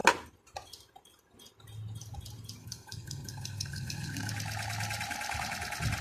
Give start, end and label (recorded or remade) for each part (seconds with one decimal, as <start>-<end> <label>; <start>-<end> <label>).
0.0-2.6 recorded; 2.6-4.3 remade; 4.3-6.0 recorded